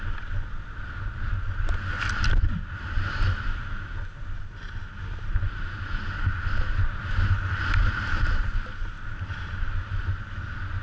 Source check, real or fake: real